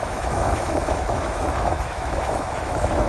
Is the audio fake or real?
fake